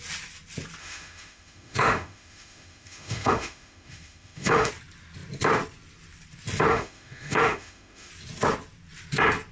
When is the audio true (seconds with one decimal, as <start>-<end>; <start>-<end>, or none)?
0.0-0.8; 4.7-6.7; 8.1-9.5